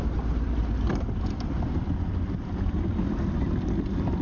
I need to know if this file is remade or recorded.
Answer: recorded